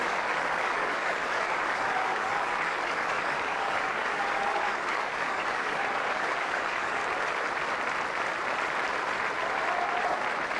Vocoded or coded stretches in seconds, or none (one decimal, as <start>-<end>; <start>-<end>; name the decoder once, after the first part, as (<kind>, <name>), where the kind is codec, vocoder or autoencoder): 0.0-7.0 (codec, DAC)